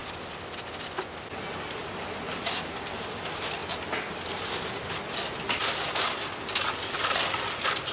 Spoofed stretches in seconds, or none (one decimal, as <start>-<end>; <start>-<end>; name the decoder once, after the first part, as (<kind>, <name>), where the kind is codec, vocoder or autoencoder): none